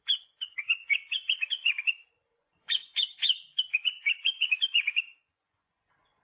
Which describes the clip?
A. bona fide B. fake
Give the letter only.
B